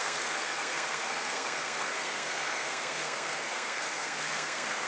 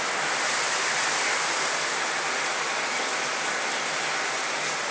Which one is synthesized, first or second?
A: first